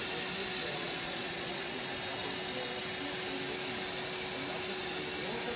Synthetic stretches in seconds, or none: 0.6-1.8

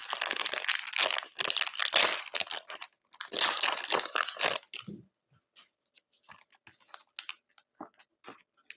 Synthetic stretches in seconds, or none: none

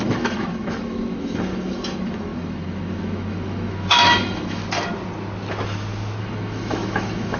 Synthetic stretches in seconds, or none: 0.0-4.6; 6.2-7.4

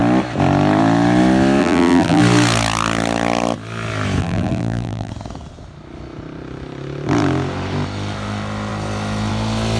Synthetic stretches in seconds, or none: 1.6-2.2; 4.2-5.1

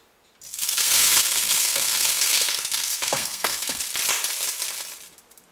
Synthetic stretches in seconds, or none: 0.5-3.8

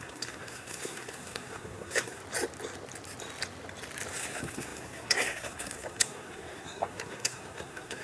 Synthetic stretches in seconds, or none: 0.0-2.2; 4.1-8.0